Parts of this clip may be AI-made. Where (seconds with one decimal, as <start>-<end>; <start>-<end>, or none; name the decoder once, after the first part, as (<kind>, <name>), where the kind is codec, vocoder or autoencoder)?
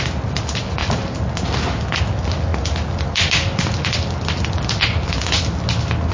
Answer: none